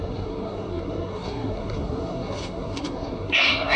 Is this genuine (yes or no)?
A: no